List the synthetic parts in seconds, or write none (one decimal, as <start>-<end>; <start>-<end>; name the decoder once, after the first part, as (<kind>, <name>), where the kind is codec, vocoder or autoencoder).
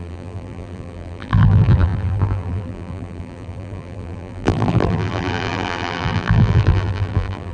0.0-7.5 (vocoder, BigVGAN v2)